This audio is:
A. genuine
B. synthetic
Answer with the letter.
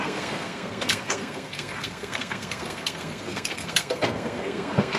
B